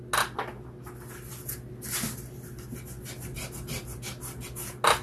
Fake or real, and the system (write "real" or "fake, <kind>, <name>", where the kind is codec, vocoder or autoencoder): real